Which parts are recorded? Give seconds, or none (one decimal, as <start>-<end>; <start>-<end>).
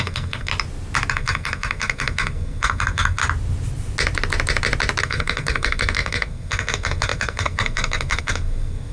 0.5-1.1; 3.2-5.0